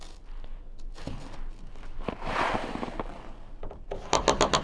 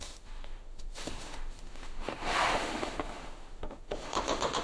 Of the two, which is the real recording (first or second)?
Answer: first